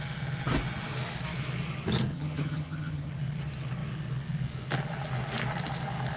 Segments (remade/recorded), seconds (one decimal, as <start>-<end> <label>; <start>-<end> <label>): 0.0-2.1 recorded; 2.1-3.1 remade; 3.1-6.2 recorded